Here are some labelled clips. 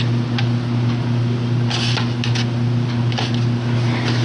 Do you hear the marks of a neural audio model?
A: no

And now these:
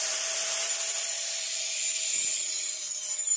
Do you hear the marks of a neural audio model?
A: yes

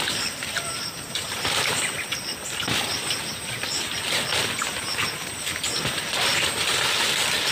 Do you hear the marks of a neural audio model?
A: yes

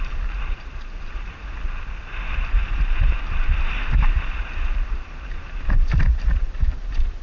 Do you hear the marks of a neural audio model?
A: yes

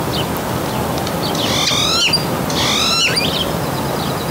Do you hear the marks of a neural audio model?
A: no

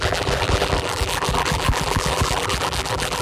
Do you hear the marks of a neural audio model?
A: yes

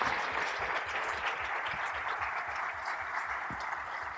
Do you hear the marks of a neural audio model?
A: no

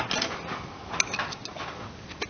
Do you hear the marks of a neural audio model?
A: no